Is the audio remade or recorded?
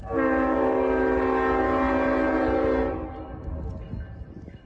recorded